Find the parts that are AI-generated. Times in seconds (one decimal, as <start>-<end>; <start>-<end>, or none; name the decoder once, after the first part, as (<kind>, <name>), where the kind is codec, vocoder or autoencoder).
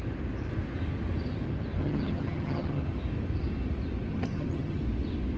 1.8-2.8 (vocoder, HiFi-GAN); 4.1-4.8